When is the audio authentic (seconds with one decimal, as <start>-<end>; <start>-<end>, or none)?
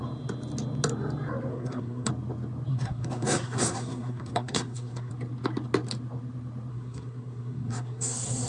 0.0-1.5; 2.1-2.7; 5.1-6.7